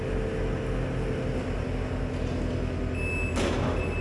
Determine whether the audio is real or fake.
real